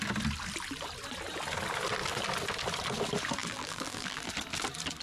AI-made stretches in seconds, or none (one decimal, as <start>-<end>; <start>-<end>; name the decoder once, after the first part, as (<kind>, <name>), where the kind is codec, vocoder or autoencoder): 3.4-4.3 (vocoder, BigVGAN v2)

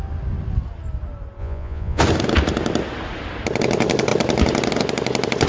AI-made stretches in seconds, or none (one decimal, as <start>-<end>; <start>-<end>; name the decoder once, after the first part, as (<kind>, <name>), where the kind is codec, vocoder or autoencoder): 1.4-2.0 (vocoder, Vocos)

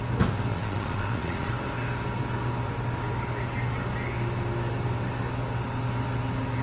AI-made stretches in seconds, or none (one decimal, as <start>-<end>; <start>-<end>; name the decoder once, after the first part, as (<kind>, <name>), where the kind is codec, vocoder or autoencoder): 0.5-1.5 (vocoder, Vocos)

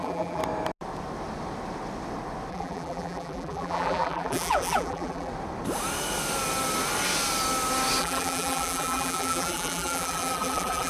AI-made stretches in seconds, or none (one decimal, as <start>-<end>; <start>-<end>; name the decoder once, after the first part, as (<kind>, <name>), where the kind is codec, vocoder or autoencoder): 0.0-0.4 (vocoder, BigVGAN v2); 2.5-5.3; 8.0-10.9